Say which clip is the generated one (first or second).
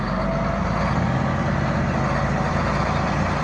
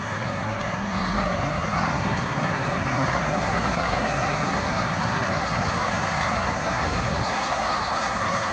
second